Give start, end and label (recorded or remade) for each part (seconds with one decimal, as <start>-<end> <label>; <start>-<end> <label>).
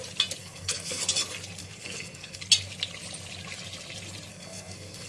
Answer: 0.0-0.4 recorded; 0.4-1.0 remade; 1.0-1.6 recorded; 1.6-2.4 remade; 2.4-4.3 recorded; 4.3-5.1 remade